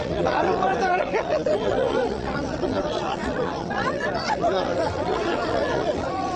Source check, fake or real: fake